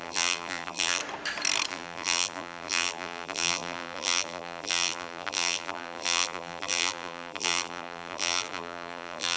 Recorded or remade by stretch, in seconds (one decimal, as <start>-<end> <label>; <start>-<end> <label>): 0.0-1.0 remade; 1.0-1.7 recorded; 1.7-9.4 remade

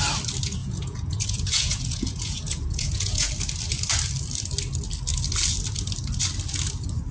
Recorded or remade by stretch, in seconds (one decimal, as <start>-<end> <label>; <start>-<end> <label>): 0.0-0.6 recorded; 0.6-3.3 remade; 3.3-7.1 recorded